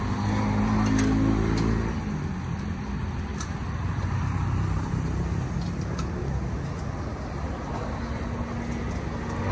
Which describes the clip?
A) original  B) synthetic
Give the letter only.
A